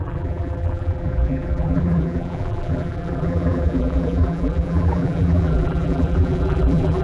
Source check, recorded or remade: remade